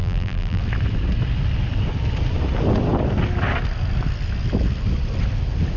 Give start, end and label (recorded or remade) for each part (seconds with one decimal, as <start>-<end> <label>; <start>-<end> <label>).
0.0-0.6 remade; 0.6-5.8 recorded